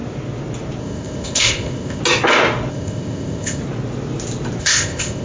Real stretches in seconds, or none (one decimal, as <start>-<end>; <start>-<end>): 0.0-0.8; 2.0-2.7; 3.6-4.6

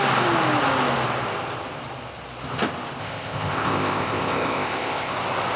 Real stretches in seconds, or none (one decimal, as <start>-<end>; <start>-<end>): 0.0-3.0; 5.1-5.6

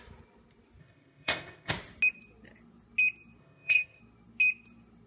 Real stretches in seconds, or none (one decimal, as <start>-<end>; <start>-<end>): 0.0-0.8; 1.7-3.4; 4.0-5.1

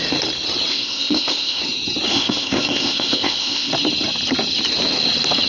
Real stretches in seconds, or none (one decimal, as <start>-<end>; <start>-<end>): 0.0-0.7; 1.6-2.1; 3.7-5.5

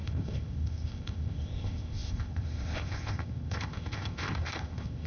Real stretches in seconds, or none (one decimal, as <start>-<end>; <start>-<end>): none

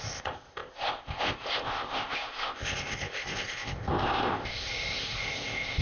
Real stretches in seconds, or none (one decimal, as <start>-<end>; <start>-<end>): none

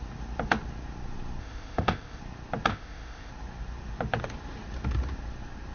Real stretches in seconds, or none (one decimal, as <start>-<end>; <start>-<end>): 0.0-1.4; 2.2-2.7; 3.3-5.7